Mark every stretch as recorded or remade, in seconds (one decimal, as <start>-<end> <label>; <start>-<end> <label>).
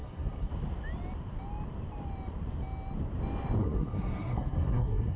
0.0-0.5 remade; 0.5-3.6 recorded; 3.6-5.2 remade